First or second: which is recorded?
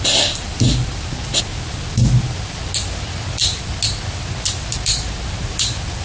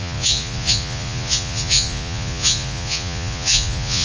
first